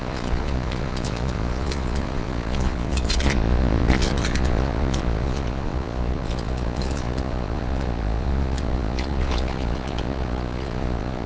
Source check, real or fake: fake